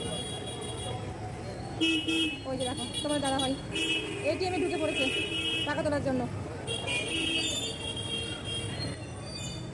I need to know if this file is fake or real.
real